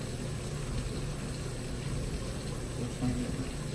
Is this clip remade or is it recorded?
recorded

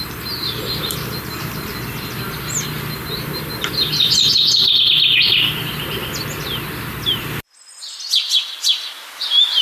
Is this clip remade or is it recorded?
recorded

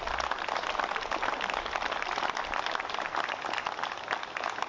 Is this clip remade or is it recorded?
recorded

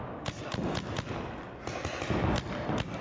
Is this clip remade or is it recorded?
recorded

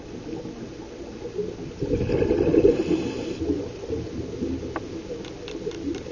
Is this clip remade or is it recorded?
recorded